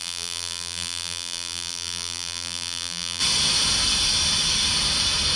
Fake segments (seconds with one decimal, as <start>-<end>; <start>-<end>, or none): 0.0-3.2